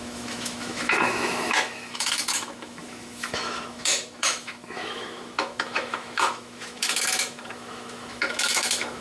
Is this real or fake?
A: fake